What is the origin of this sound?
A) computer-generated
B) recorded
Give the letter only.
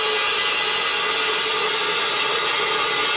B